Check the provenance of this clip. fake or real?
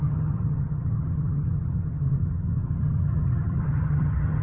fake